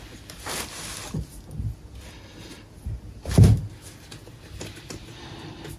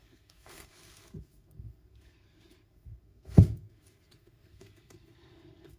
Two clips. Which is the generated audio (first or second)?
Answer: second